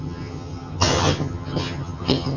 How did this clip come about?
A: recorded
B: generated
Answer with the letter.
B